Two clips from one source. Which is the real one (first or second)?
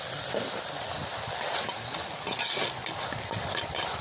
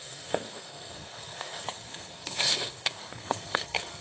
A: first